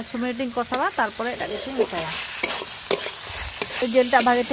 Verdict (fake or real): real